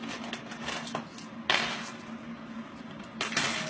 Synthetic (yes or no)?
no